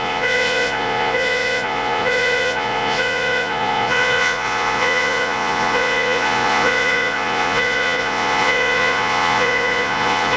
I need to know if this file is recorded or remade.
remade